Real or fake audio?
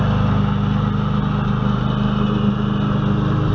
real